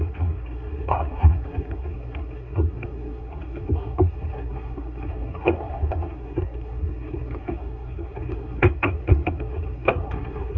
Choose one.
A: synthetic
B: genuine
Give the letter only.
A